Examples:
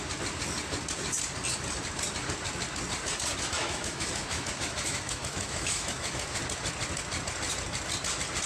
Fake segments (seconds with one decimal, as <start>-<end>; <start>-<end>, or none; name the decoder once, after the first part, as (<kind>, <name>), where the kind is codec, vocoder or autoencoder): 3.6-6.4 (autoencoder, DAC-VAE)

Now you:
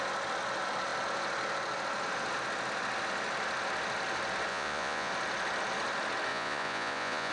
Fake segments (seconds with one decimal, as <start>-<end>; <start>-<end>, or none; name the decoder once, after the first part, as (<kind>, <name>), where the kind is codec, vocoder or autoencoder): 4.5-5.1 (vocoder, Vocos); 6.3-7.3

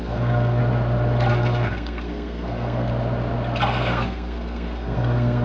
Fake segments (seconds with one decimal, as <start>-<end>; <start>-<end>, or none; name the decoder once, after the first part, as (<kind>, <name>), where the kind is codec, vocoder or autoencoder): 0.0-0.6 (codec, SNAC); 1.3-2.9; 3.7-5.4